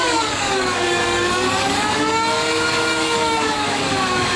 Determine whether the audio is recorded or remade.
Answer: remade